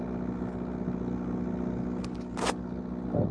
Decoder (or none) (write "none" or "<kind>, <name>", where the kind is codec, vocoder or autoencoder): none